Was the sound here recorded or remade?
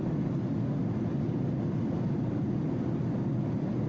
recorded